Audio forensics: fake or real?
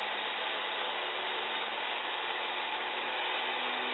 real